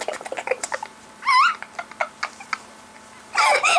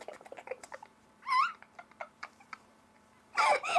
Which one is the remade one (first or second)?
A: second